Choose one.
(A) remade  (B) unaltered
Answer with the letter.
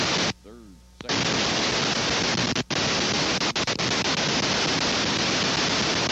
B